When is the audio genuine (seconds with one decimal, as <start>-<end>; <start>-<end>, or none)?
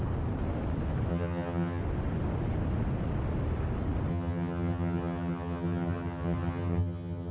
0.0-1.1; 1.8-4.1